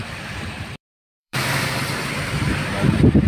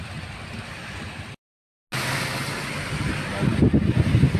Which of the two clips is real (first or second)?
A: second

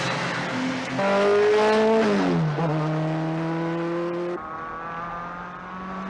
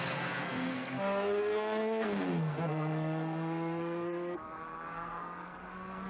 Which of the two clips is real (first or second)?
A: first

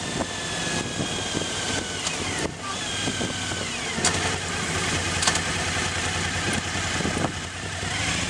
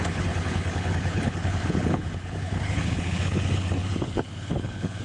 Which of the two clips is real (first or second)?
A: first